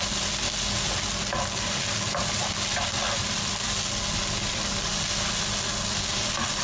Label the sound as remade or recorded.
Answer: recorded